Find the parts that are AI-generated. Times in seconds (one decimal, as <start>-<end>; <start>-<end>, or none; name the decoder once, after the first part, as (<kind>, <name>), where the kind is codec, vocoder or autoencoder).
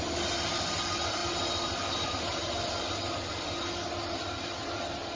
none